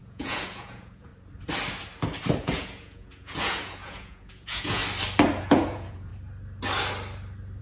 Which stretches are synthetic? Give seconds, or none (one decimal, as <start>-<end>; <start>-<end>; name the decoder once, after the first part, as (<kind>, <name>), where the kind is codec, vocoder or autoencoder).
0.0-1.1 (vocoder, Vocos); 2.4-4.8; 5.4-6.1